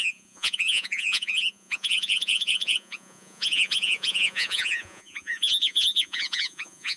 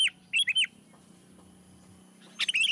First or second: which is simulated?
first